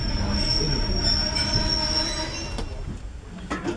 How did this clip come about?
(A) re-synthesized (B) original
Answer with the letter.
B